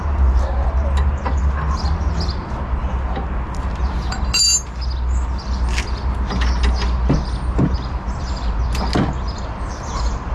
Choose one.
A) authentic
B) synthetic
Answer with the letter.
A